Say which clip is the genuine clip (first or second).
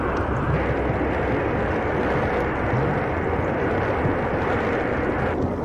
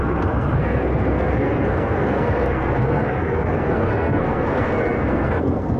first